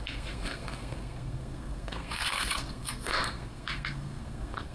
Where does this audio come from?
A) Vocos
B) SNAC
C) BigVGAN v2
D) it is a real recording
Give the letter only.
B